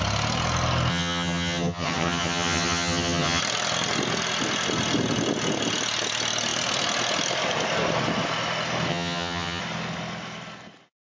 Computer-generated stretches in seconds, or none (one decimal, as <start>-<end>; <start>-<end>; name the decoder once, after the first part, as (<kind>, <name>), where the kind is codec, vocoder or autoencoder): 0.9-3.4 (vocoder, HiFi-GAN); 8.9-9.6